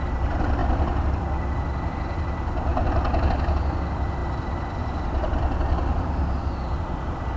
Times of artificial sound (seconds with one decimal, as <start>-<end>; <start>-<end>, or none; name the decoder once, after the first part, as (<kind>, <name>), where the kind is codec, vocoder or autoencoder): none